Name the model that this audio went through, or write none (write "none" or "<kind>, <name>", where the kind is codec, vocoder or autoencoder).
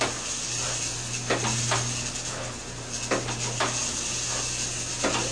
none